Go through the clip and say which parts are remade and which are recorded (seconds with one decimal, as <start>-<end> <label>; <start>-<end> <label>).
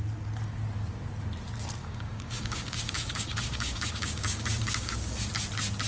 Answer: 0.0-1.8 recorded; 1.8-5.3 remade; 5.3-5.9 recorded